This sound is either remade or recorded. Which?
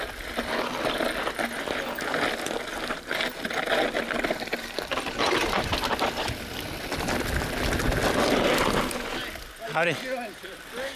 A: recorded